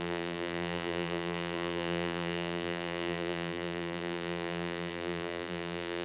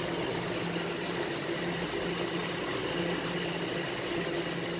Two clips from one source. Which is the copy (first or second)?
first